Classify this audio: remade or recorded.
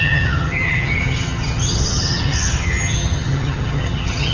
remade